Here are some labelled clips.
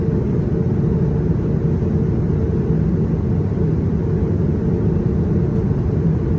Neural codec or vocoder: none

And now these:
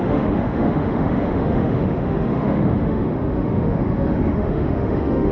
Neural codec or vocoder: autoencoder, DAC-VAE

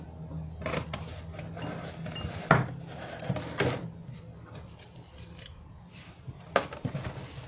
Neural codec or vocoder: none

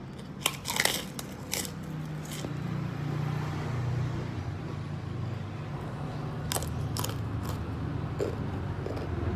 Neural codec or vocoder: none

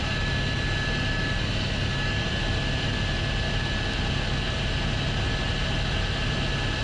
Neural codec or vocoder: none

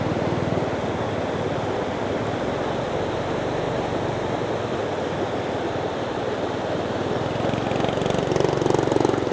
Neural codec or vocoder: none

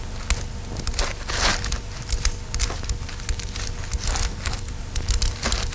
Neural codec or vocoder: none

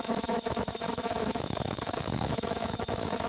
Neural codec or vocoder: autoencoder, DAC-VAE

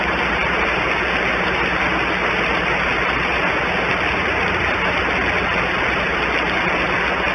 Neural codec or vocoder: none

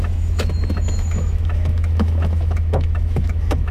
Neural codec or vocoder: autoencoder, DAC-VAE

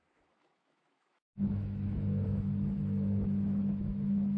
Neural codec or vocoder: autoencoder, DAC-VAE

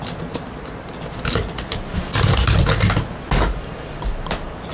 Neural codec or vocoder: none